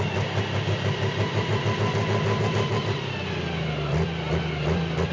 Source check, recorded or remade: recorded